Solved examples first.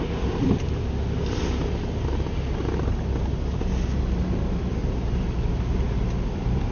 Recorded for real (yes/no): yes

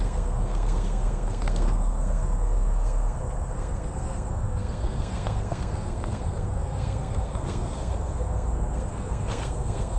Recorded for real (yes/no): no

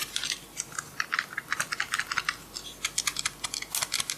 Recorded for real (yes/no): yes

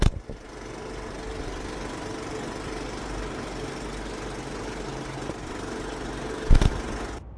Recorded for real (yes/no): yes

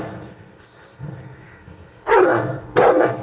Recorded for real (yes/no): no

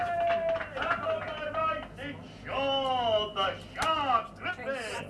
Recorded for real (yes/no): yes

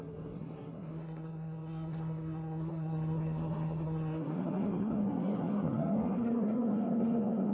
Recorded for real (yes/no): no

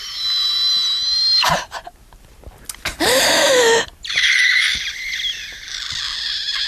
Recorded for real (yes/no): yes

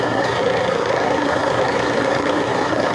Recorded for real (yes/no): no